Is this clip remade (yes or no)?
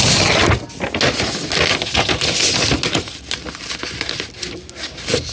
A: no